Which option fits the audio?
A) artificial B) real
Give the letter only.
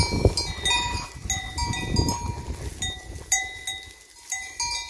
B